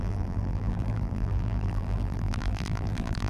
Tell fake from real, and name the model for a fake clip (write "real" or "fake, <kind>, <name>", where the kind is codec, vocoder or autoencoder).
fake, vocoder, BigVGAN v2